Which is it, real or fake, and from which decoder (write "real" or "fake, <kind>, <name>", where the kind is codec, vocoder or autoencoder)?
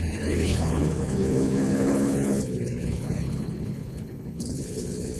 fake, codec, HILCodec